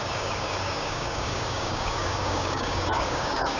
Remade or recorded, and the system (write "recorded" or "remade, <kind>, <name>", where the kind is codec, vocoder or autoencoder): remade, codec, DAC